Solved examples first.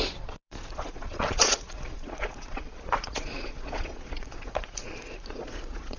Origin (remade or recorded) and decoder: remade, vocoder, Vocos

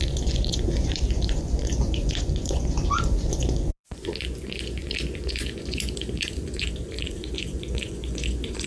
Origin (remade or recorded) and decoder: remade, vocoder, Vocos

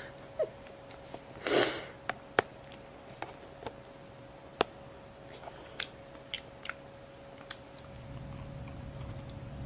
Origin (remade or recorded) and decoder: recorded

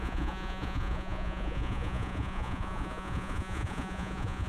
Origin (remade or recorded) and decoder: remade, vocoder, Vocos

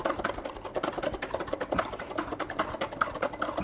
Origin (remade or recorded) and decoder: recorded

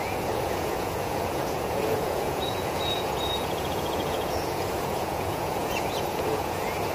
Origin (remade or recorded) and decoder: remade, vocoder, Vocos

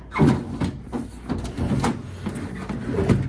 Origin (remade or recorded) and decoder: recorded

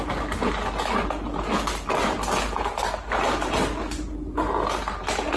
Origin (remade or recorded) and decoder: recorded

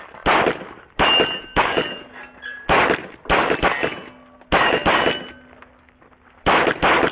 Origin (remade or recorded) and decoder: recorded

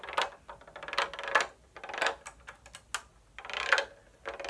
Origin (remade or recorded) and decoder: recorded